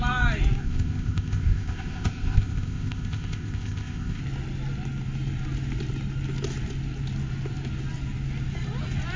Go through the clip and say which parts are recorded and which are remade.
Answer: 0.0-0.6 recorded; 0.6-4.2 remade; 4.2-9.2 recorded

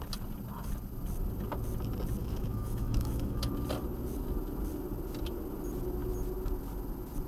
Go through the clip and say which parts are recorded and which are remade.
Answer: 0.0-2.2 recorded; 2.2-3.5 remade; 3.5-7.3 recorded

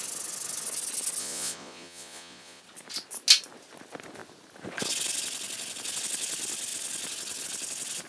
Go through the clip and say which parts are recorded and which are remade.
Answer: 0.0-1.2 recorded; 1.2-2.6 remade; 2.6-8.1 recorded